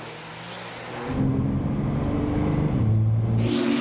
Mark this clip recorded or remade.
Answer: recorded